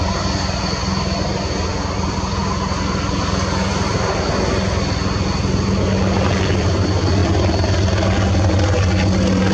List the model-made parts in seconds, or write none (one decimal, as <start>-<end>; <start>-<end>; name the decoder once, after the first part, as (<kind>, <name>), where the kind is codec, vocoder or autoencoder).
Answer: none